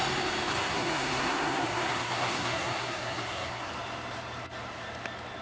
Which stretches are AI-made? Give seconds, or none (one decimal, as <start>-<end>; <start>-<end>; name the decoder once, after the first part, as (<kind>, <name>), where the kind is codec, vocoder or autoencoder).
0.5-3.7 (codec, SNAC)